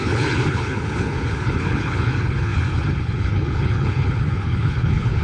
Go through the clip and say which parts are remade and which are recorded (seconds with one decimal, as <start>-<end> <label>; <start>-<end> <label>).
0.0-5.2 remade